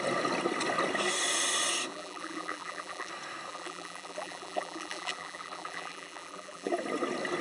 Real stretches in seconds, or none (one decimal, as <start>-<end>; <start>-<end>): 0.0-1.9; 3.1-3.5; 6.7-7.4